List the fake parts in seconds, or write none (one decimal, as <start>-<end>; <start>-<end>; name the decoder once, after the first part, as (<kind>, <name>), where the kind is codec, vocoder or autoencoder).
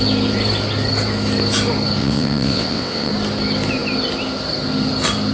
2.0-3.1 (vocoder, WaveNeXt)